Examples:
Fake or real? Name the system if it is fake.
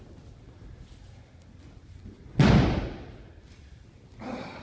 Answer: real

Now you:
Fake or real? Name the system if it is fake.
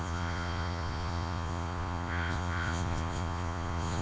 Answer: fake, vocoder, Vocos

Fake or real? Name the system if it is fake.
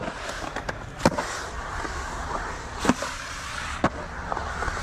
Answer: real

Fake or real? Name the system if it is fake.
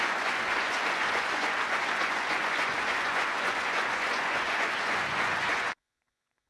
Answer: fake, vocoder, Vocos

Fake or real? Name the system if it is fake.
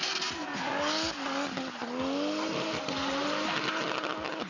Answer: real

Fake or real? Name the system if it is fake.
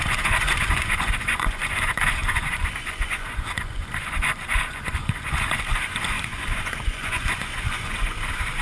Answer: fake, vocoder, Vocos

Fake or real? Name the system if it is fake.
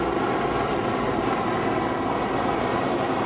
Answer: real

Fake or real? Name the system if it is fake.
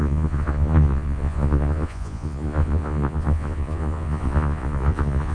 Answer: fake, vocoder, Vocos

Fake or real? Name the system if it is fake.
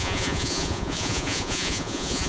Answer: fake, vocoder, Vocos